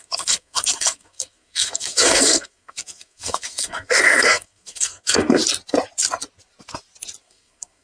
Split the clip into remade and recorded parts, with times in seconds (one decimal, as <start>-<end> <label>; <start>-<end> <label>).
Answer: 0.0-5.4 remade; 5.4-7.2 recorded; 7.2-7.8 remade

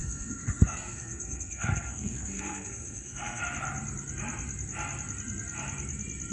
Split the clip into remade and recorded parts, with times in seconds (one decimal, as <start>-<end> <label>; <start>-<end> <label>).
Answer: 0.0-3.4 remade; 3.4-6.3 recorded

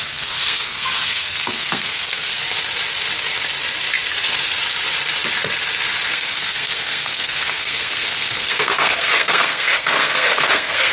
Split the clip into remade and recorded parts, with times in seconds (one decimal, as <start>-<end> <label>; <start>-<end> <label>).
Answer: 0.0-2.4 remade; 2.4-6.1 recorded; 6.1-10.9 remade

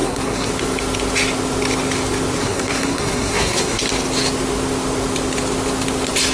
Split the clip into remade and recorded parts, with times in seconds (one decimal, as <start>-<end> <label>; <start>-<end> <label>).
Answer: 0.0-0.5 remade; 0.5-2.4 recorded; 2.4-3.8 remade; 3.8-6.3 recorded

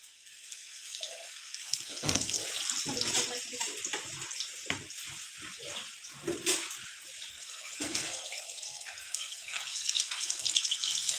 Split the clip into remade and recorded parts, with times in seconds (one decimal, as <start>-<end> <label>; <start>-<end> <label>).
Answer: 0.0-2.4 remade; 2.4-7.3 recorded; 7.3-11.2 remade

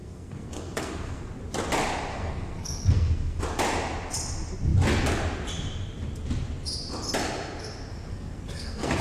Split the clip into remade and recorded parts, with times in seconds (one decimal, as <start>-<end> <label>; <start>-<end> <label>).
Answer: 0.0-1.3 remade; 1.3-2.1 recorded; 2.1-3.4 remade; 3.4-7.9 recorded; 7.9-9.0 remade

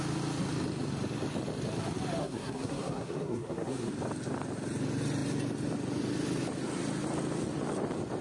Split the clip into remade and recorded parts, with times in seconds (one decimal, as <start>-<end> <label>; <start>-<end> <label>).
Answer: 0.0-2.2 recorded; 2.2-3.9 remade; 3.9-8.2 recorded

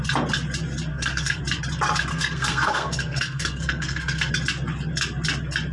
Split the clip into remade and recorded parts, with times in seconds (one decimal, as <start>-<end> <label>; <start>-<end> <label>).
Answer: 0.0-0.9 recorded; 0.9-1.4 remade; 1.4-2.1 recorded; 2.1-4.3 remade; 4.3-5.7 recorded